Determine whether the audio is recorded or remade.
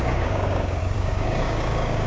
remade